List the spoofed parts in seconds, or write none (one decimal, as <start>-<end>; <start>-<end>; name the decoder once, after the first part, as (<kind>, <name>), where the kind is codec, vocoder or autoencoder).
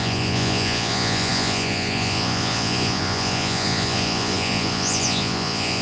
0.0-5.8 (vocoder, Vocos)